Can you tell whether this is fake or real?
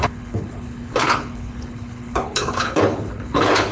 fake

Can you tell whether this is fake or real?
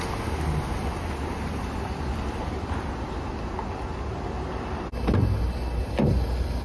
real